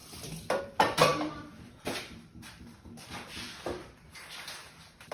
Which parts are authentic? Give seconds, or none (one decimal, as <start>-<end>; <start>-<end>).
0.0-0.6